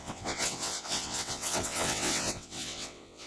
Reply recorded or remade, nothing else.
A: remade